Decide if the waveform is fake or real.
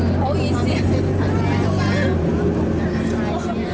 real